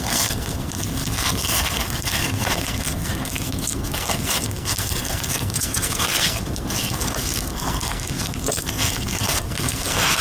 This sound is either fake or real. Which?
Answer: fake